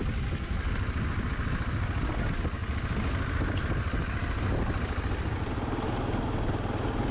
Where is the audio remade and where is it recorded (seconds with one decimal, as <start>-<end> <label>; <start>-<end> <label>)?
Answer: 0.0-7.1 recorded